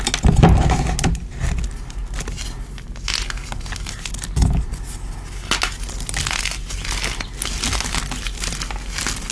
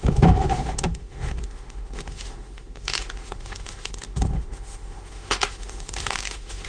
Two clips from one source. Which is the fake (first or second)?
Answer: second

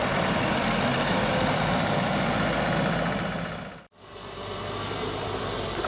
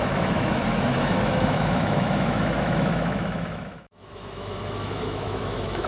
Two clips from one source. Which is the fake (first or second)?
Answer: second